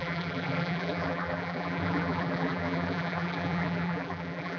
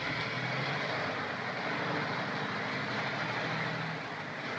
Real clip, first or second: second